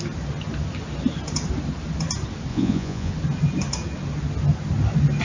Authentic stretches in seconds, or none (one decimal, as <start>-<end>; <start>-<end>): 0.0-2.5; 3.1-5.2